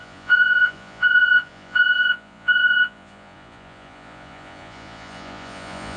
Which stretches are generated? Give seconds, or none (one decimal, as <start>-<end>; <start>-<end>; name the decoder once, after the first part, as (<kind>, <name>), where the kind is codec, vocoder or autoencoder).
0.0-6.0 (vocoder, Vocos)